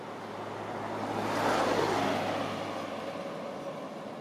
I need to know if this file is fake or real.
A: real